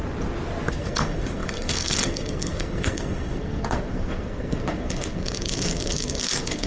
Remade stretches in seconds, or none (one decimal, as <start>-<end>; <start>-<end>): 0.7-6.7